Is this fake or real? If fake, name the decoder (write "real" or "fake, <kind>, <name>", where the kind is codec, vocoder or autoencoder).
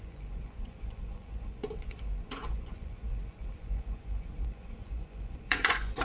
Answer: fake, vocoder, Vocos